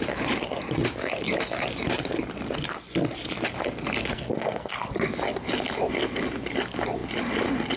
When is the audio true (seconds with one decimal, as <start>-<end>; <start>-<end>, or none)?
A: 0.0-4.0; 4.7-7.8